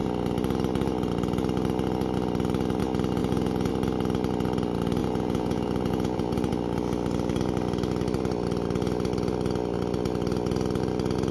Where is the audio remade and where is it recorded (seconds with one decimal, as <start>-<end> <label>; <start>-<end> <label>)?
0.0-3.2 recorded; 3.2-3.7 remade; 3.7-5.0 recorded; 5.0-6.5 remade; 6.5-11.3 recorded